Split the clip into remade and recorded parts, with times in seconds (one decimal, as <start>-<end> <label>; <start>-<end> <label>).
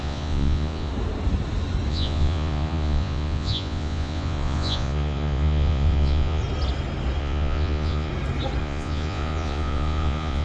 0.0-0.9 remade; 0.9-1.9 recorded; 1.9-6.4 remade; 6.4-7.2 recorded; 7.2-8.1 remade; 8.1-8.6 recorded; 8.6-10.4 remade